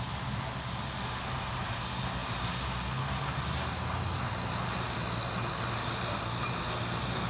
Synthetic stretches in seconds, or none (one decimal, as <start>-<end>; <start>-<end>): none